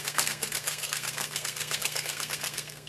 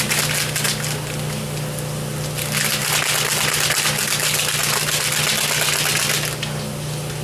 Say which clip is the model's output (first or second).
first